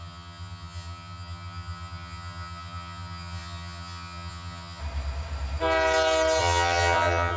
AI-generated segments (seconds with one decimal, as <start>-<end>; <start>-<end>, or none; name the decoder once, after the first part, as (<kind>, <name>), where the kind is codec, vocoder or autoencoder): 0.0-4.8 (vocoder, HiFi-GAN); 6.4-7.4